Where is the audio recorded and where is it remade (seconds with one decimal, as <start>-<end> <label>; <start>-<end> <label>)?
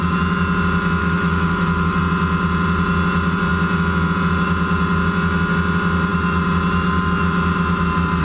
0.0-1.0 recorded; 1.0-2.0 remade; 2.0-8.2 recorded